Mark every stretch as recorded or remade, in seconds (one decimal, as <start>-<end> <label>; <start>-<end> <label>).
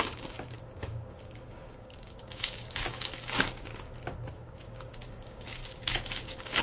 0.0-3.7 remade; 3.7-4.3 recorded; 4.3-6.6 remade